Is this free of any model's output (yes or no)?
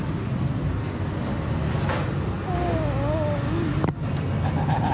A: yes